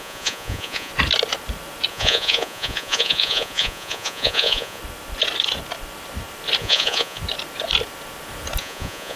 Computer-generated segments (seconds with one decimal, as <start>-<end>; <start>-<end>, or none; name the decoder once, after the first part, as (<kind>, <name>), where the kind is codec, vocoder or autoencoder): 0.0-0.9 (vocoder, Vocos); 1.9-4.8; 6.6-7.2; 8.6-9.2

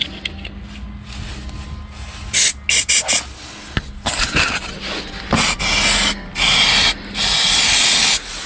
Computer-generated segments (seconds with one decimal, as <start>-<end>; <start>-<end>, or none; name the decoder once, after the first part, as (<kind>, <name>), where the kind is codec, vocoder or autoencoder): none

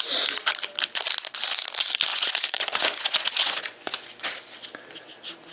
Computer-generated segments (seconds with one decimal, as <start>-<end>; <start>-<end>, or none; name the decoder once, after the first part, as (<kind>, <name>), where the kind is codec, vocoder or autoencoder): 2.1-4.1 (vocoder, Vocos)

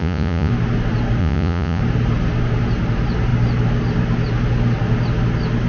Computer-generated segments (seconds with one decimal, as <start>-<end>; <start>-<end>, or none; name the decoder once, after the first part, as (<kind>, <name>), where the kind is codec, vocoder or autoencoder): 0.0-0.5 (vocoder, Vocos); 1.2-1.8

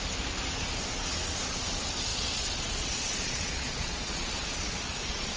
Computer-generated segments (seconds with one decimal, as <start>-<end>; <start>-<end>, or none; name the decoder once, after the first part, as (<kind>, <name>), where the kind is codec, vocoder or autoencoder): 2.1-5.4 (vocoder, Vocos)

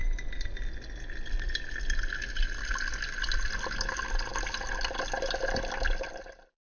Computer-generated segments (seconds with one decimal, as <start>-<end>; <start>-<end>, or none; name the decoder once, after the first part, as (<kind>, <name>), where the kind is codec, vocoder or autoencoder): none

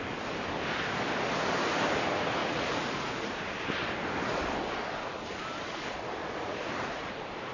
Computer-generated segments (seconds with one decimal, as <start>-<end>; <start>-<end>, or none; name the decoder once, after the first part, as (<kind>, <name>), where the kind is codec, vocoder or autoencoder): 2.4-3.2 (vocoder, Vocos); 6.2-7.1